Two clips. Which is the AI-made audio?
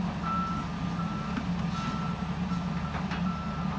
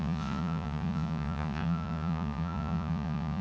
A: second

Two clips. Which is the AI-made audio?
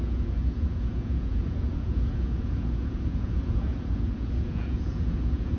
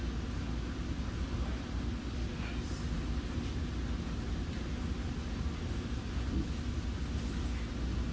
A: first